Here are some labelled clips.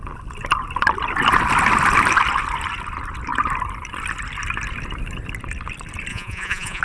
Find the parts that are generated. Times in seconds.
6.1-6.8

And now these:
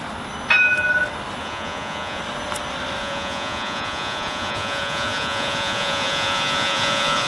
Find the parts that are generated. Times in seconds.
1.4-2.2; 3.0-7.3

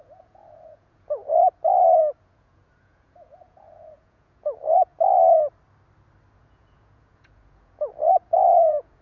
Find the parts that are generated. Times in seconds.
0.0-1.4; 2.2-4.9; 6.3-9.0

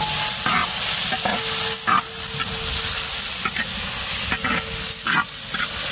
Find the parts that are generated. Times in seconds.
none

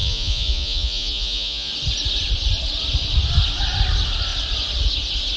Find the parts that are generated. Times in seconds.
0.0-1.7

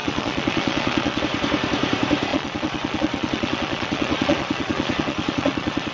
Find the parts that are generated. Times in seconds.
0.0-1.2; 2.3-5.9

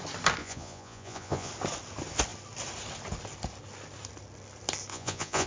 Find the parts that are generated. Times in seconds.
0.4-1.5; 4.9-5.5

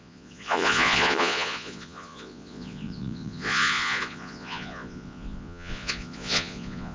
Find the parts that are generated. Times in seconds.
0.0-6.9